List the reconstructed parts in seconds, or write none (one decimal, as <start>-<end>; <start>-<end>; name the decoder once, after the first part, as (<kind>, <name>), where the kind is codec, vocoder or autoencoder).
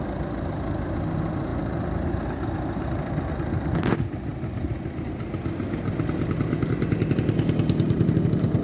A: none